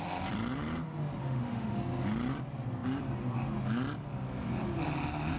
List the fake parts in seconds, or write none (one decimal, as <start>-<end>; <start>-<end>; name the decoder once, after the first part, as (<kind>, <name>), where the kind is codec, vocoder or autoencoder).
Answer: 1.2-1.8 (autoencoder, DAC-VAE)